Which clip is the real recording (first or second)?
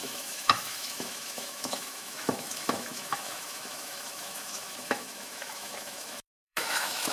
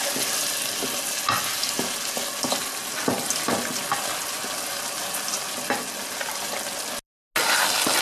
second